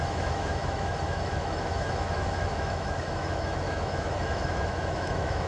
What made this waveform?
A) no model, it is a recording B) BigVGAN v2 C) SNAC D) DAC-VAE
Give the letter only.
D